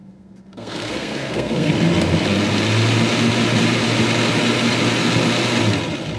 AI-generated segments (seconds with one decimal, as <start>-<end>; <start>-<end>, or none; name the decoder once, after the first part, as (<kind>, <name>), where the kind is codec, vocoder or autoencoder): 0.0-1.7 (codec, SNAC)